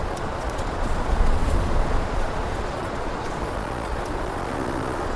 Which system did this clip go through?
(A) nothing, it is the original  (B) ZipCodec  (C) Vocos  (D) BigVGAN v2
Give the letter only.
C